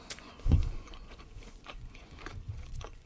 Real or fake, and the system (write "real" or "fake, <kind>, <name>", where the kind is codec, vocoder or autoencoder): fake, vocoder, Vocos